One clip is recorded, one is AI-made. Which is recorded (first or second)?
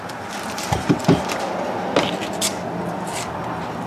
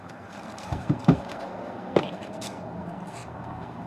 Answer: first